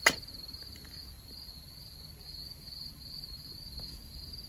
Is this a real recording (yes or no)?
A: yes